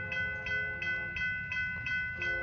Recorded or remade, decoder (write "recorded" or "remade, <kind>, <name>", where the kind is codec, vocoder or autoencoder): recorded